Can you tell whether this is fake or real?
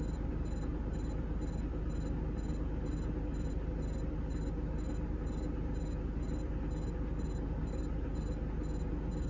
real